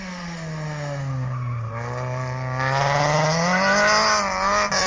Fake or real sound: real